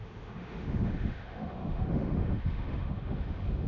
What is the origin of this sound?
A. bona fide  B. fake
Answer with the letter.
B